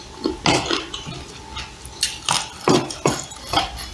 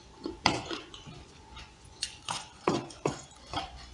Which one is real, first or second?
first